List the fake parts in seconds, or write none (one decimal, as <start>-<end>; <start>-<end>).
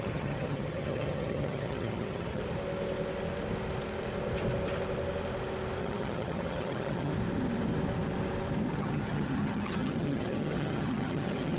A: 0.0-2.4; 5.8-7.1; 8.7-11.6